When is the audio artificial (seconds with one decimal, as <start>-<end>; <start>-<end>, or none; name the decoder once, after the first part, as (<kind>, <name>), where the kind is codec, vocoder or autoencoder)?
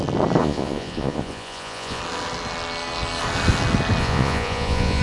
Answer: 0.4-2.0 (vocoder, Vocos); 4.0-5.0